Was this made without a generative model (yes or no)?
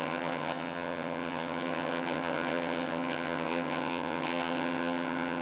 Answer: no